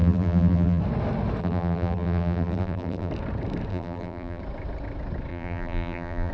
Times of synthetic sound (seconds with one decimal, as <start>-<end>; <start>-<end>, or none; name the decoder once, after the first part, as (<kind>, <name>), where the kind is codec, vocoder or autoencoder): 0.0-0.8 (vocoder, BigVGAN v2); 1.4-3.1; 3.7-4.4; 5.3-6.3